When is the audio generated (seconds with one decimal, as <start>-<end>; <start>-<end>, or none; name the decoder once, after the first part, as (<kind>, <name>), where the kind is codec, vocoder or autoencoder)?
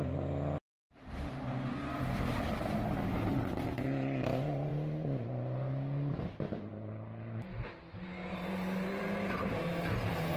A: 8.2-9.9 (vocoder, BigVGAN v2)